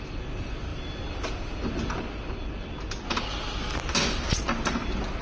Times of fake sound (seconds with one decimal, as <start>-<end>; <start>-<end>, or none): none

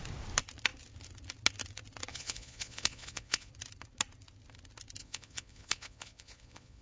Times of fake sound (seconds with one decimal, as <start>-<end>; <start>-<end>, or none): 2.1-3.5; 5.0-6.8